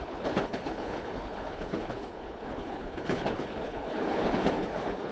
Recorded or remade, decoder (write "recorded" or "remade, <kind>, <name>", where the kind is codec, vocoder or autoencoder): remade, codec, HILCodec